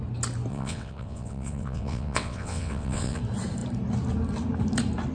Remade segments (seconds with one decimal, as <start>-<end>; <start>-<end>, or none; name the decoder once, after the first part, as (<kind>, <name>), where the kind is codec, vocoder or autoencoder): 0.5-3.2 (vocoder, WaveNeXt)